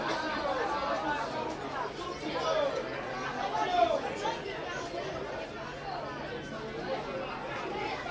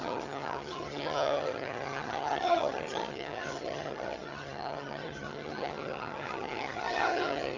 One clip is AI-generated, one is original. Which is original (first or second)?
first